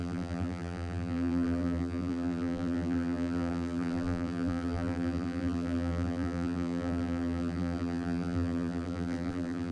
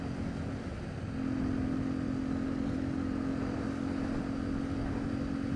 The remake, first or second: first